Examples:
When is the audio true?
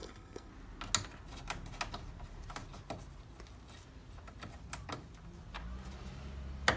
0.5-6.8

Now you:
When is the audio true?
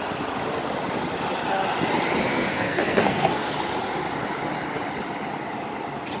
0.0-2.3; 3.5-6.2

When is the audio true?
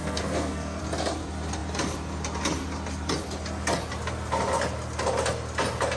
0.8-6.0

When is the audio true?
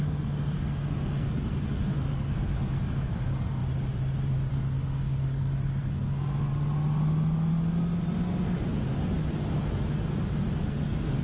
3.6-4.5; 6.5-10.6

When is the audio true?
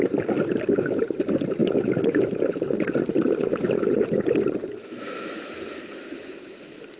0.0-7.0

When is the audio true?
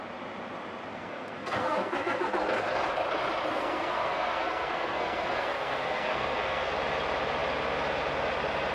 0.0-0.9; 2.8-3.5; 6.7-8.7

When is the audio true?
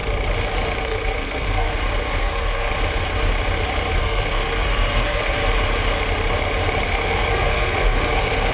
0.0-0.8; 1.7-2.2; 2.7-4.0; 5.4-6.8